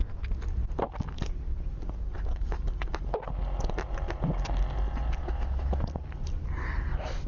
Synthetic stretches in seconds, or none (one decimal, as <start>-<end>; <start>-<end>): 5.2-5.8